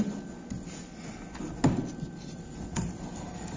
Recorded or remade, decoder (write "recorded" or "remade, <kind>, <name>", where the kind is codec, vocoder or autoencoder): recorded